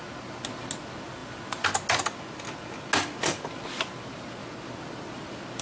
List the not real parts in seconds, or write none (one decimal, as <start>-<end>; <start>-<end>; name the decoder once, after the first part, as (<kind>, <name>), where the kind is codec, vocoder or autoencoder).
none